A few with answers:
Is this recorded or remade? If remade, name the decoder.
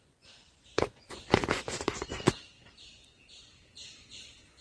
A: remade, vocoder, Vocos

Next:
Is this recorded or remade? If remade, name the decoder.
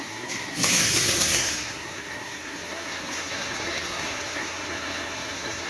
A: remade, codec, SNAC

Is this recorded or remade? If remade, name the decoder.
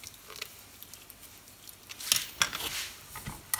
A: recorded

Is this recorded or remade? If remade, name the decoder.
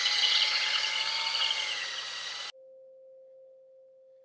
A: recorded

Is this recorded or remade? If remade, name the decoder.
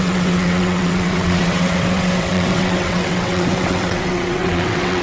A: remade, vocoder, WaveNeXt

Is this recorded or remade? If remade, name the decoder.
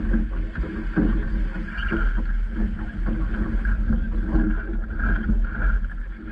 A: recorded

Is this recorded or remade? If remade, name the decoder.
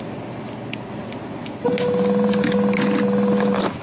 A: recorded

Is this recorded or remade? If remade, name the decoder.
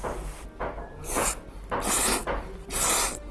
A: recorded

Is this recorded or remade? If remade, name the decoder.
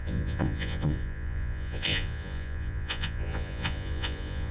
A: remade, vocoder, Vocos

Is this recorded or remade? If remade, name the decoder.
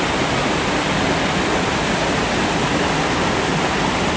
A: recorded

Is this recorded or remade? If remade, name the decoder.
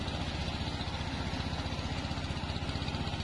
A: recorded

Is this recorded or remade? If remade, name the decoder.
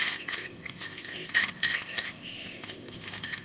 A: remade, codec, ZipCodec